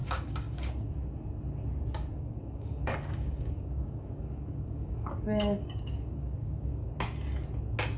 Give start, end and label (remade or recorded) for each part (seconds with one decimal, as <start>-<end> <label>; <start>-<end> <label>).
0.0-0.9 remade; 0.9-2.1 recorded; 2.1-6.9 remade; 6.9-8.0 recorded